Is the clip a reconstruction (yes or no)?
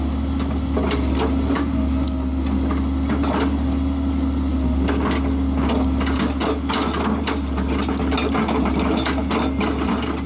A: no